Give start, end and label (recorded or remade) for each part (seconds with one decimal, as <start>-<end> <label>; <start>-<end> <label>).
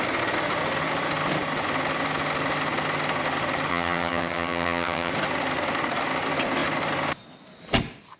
0.0-3.7 recorded; 3.7-5.1 remade; 5.1-8.2 recorded